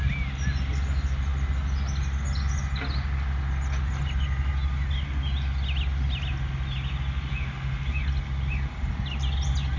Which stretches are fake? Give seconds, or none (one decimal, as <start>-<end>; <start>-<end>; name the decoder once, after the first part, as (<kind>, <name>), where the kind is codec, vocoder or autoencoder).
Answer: none